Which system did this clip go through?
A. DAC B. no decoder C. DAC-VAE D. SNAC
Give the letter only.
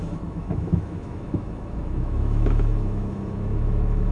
C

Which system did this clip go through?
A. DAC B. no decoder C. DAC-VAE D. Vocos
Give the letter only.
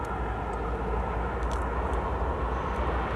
B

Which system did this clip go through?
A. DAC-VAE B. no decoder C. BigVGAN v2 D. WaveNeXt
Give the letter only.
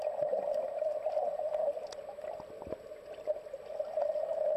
B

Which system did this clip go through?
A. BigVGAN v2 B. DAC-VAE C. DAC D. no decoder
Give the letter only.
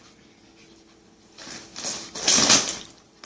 D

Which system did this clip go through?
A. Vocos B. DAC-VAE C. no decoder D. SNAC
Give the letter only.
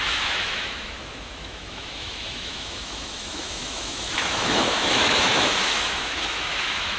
B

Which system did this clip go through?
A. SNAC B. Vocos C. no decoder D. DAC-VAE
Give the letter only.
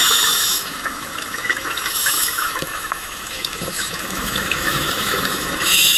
D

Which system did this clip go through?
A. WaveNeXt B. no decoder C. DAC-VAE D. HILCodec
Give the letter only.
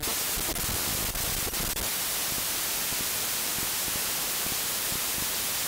B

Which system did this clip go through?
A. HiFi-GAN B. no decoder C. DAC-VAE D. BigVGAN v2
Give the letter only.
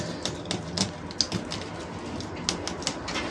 B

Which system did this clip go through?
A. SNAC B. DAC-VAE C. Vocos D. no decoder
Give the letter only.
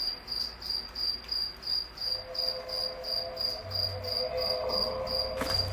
D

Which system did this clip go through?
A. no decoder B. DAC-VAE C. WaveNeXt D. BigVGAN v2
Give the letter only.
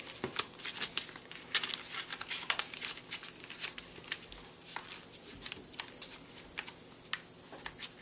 A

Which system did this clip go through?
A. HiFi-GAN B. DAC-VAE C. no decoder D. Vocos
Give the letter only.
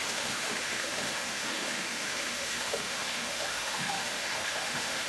B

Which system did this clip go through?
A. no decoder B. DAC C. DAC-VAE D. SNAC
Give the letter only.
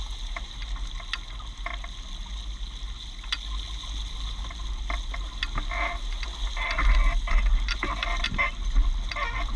A